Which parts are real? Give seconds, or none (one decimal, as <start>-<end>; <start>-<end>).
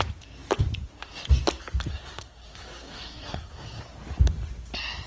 0.0-1.9; 3.8-5.1